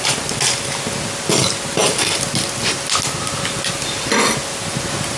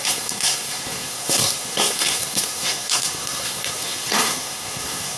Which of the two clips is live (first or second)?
first